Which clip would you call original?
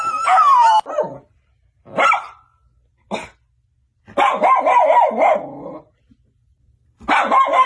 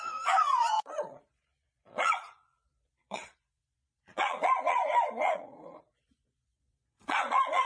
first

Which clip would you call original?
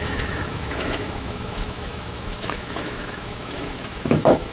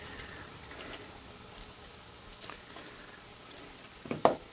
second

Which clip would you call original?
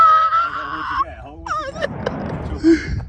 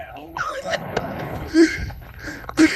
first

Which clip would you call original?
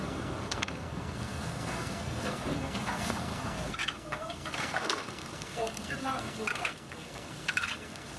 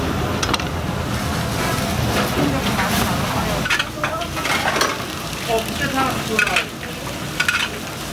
second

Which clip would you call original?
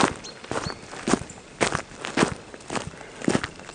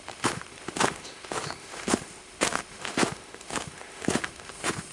first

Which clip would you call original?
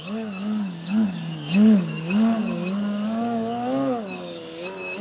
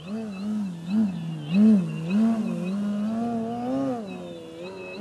second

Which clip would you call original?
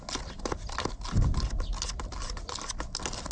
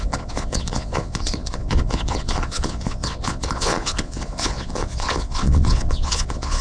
first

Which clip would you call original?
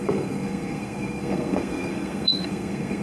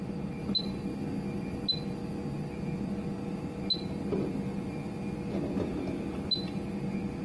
second